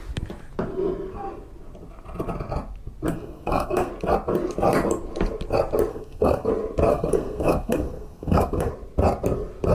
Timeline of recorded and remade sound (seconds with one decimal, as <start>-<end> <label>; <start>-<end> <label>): 0.0-3.1 recorded; 3.1-3.9 remade; 3.9-5.9 recorded; 5.9-6.5 remade; 6.5-6.9 recorded; 6.9-8.7 remade; 8.7-9.7 recorded